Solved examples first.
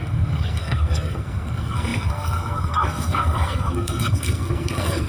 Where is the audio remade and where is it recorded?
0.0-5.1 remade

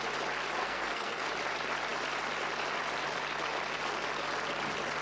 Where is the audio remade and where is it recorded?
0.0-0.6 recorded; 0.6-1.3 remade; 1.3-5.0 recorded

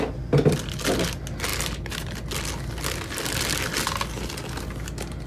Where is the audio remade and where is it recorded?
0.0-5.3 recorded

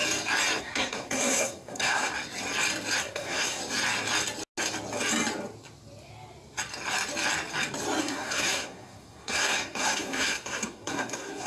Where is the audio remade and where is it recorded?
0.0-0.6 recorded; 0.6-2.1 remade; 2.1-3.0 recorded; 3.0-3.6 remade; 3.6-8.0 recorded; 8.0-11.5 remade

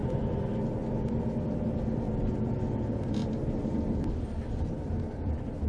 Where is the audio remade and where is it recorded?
0.0-5.7 recorded